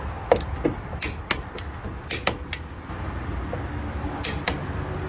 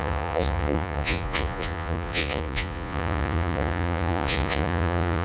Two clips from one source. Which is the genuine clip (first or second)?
first